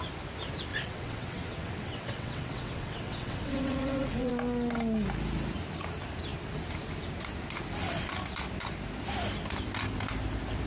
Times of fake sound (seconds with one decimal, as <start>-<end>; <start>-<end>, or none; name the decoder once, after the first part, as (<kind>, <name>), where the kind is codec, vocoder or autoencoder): 0.7-4.3 (vocoder, WaveNeXt)